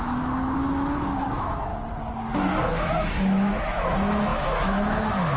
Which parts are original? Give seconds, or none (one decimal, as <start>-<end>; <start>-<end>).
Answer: 1.7-2.7